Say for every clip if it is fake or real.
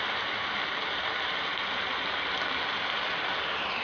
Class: real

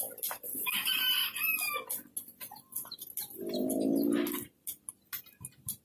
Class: real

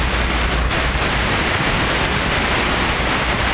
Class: real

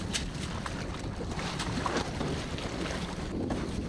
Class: real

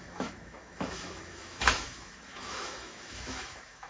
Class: fake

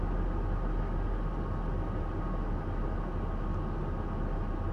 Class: real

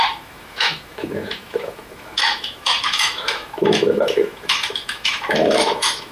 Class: fake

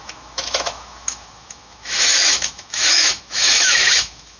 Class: fake